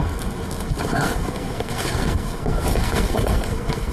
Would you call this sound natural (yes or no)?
no